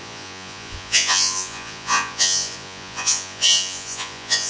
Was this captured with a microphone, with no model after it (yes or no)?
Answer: no